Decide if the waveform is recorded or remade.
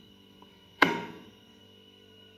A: remade